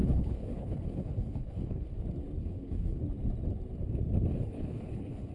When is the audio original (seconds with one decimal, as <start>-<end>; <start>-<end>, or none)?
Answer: 2.0-2.4; 3.0-4.3